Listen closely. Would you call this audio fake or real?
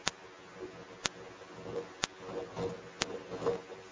real